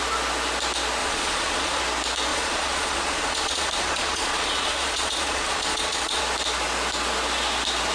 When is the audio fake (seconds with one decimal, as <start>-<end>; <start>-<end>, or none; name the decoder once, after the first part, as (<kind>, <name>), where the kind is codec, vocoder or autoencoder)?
1.0-1.8 (vocoder, Vocos); 2.3-6.2